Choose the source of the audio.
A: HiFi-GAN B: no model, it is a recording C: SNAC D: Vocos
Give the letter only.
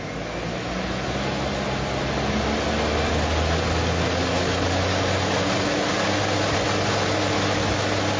B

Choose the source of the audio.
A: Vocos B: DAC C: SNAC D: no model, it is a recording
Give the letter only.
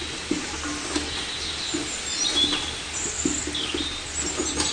D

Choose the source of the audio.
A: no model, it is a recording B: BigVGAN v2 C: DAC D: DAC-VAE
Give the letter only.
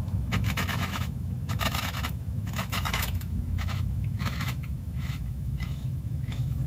D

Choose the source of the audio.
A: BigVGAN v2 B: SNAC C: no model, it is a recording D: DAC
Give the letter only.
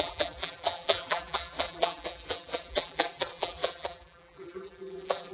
A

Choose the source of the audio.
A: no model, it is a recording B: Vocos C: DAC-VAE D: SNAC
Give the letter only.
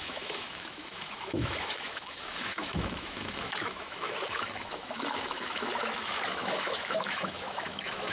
C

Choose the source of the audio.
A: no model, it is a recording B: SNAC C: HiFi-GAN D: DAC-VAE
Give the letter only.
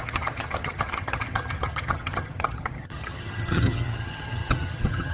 C